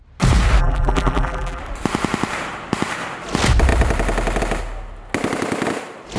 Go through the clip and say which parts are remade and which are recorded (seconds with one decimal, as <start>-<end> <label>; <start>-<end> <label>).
0.0-0.6 recorded; 0.6-1.6 remade; 1.6-6.2 recorded